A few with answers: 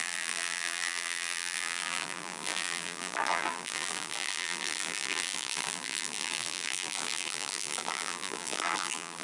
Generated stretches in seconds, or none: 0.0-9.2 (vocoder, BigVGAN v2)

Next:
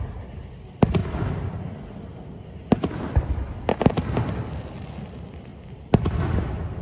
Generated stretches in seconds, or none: 1.0-1.6 (vocoder, BigVGAN v2); 2.1-3.5; 5.5-6.1

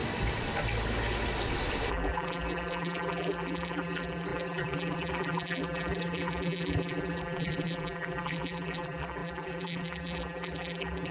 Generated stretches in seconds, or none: 1.9-11.1 (vocoder, BigVGAN v2)

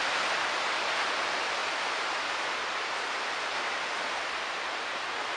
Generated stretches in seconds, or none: 1.6-4.5 (vocoder, BigVGAN v2)

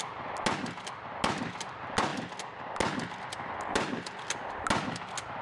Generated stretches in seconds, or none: none